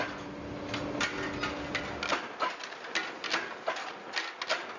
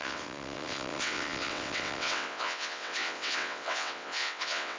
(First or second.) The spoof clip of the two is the second